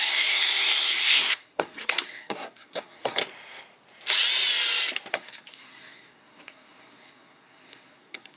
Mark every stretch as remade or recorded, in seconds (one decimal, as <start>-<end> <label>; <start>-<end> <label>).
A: 0.0-3.2 remade; 3.2-5.1 recorded; 5.1-8.4 remade